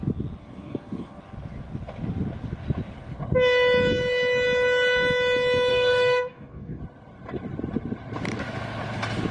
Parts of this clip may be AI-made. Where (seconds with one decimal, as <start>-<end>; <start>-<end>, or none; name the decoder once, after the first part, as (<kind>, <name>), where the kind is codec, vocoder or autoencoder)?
0.4-1.2 (codec, DAC); 5.7-6.8